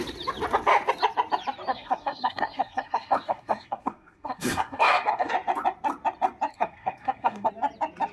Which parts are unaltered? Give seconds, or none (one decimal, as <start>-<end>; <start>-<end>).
0.0-1.7; 5.3-6.5; 7.5-8.1